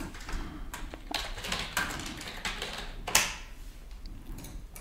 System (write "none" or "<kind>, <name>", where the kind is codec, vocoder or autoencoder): none